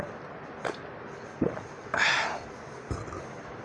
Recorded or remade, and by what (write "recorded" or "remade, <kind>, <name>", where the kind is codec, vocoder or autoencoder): recorded